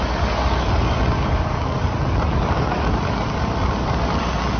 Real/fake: real